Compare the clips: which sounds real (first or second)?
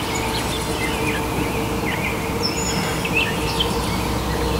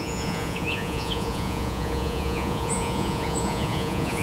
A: first